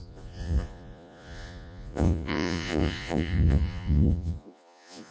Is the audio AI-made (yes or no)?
yes